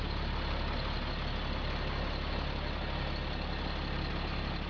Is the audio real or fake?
real